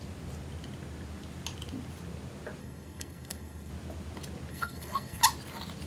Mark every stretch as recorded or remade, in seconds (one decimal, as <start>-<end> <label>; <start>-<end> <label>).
0.0-2.6 recorded; 2.6-3.7 remade; 3.7-4.5 recorded; 4.5-5.2 remade; 5.2-5.9 recorded